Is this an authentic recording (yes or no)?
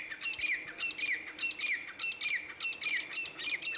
yes